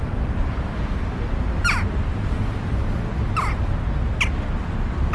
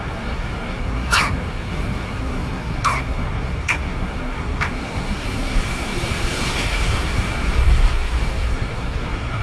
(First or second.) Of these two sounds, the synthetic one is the second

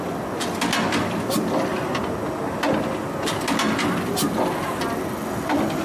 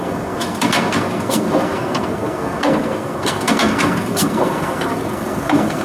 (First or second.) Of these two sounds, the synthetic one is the second